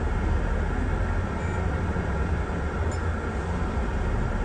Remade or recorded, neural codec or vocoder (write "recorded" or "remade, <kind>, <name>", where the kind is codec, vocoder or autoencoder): recorded